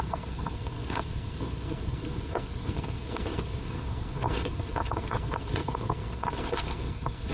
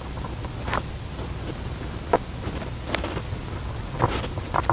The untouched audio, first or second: second